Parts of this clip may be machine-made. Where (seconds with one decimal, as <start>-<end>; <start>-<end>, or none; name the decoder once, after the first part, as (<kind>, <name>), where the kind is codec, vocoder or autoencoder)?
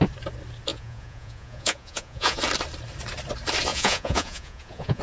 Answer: 0.7-2.4 (vocoder, Vocos); 3.7-5.0